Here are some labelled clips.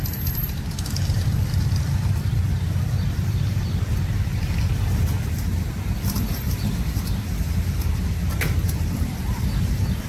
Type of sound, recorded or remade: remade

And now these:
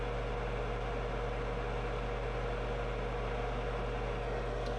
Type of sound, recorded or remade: recorded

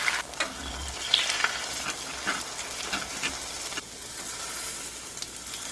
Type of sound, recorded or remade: recorded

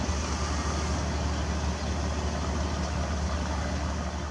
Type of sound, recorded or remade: recorded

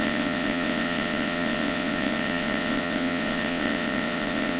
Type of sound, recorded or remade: remade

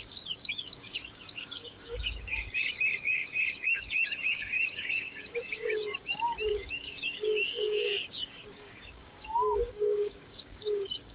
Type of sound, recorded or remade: remade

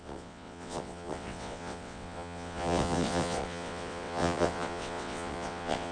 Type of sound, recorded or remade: remade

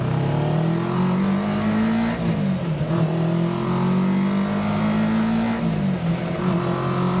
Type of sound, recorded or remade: recorded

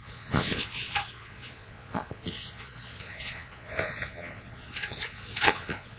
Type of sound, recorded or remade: remade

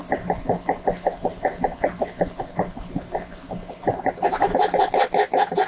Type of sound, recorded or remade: recorded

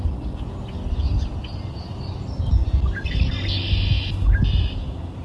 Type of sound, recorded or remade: recorded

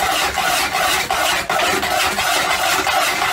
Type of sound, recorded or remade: recorded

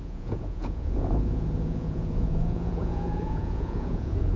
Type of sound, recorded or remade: remade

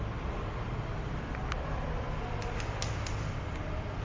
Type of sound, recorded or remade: recorded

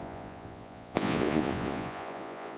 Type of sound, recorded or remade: remade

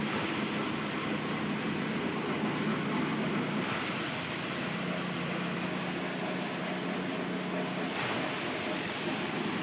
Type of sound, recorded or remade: recorded